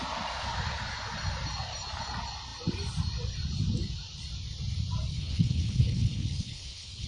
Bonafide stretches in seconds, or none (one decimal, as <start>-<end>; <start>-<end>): 0.0-5.1